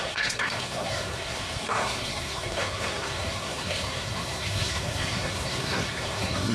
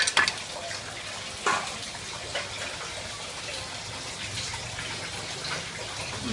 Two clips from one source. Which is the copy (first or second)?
first